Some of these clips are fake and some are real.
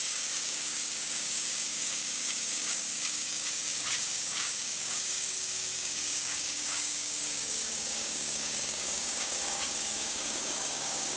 fake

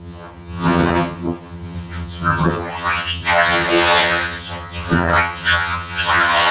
fake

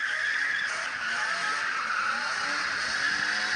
real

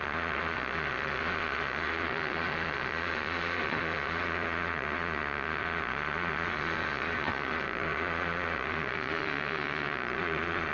fake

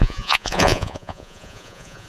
fake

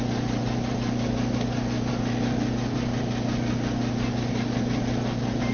real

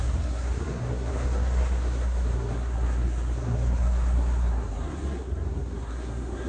fake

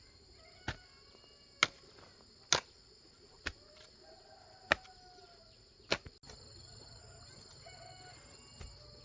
real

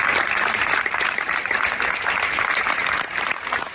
fake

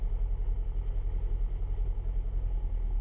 real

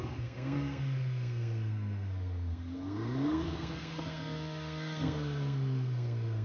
fake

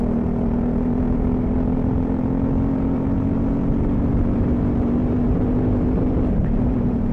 fake